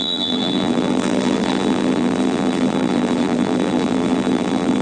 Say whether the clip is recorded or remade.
remade